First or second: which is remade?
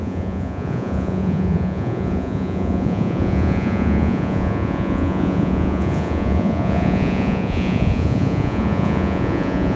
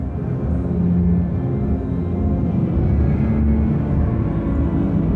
first